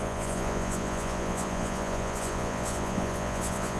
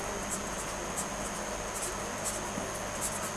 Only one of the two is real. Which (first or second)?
second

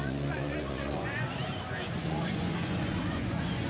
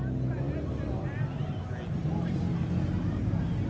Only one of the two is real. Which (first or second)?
second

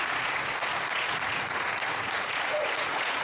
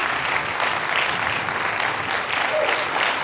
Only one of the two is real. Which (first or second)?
second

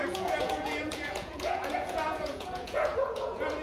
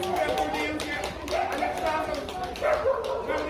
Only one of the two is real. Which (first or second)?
second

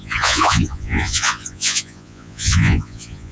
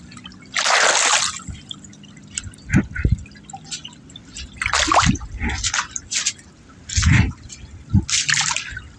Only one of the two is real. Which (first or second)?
second